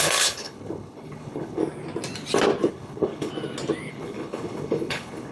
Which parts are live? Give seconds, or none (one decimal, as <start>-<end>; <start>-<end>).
1.6-2.7; 3.3-3.9